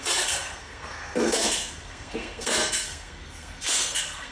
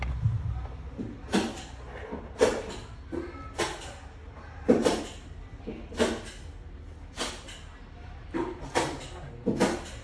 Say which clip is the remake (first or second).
first